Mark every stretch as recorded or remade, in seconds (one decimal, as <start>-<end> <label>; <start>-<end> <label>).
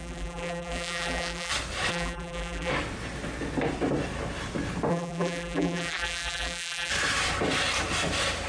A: 0.0-1.5 remade; 1.5-1.9 recorded; 1.9-2.7 remade; 2.7-4.9 recorded; 4.9-6.9 remade; 6.9-8.5 recorded